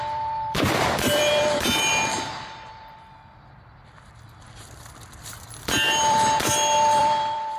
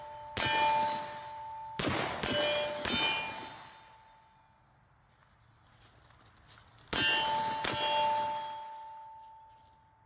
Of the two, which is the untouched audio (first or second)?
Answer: second